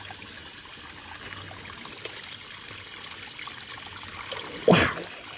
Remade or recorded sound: recorded